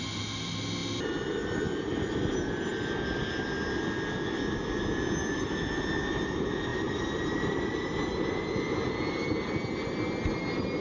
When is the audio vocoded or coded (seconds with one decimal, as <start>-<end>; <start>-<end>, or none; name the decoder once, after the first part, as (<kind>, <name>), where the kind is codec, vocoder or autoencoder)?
none